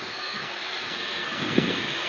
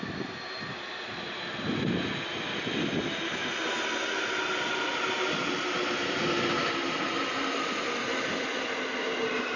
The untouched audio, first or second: second